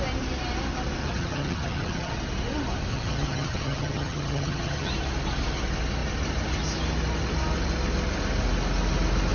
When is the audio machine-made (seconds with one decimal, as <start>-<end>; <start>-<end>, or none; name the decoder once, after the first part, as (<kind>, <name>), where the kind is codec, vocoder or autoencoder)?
1.0-2.1 (vocoder, HiFi-GAN); 2.9-4.9